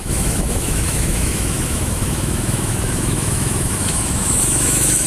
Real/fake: fake